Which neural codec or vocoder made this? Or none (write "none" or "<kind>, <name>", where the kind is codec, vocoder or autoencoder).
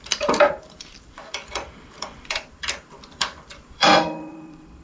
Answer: vocoder, BigVGAN v2